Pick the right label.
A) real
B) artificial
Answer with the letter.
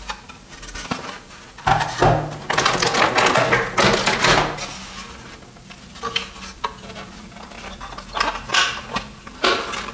A